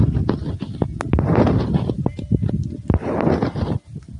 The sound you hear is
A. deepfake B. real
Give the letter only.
B